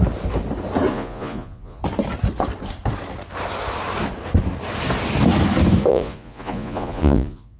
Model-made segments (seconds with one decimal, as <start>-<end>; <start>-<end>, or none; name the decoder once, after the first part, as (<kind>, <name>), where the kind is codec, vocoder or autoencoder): 0.9-1.8 (vocoder, Vocos); 5.9-7.6